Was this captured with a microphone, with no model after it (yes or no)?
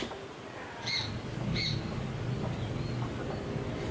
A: yes